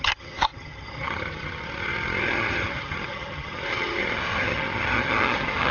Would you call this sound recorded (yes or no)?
no